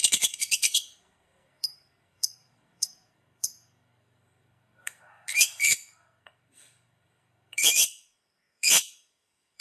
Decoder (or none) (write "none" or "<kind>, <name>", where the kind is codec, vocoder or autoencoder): codec, SNAC